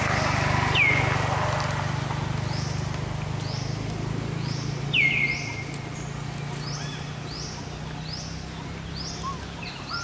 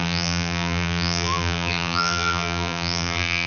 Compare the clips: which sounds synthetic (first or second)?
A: second